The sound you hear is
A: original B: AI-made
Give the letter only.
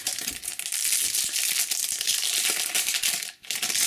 A